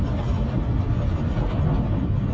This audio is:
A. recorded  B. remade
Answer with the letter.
A